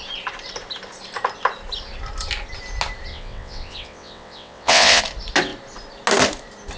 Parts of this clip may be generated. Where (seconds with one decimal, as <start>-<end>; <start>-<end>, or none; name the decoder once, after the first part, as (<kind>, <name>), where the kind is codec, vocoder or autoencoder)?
3.1-5.0 (vocoder, WaveNeXt)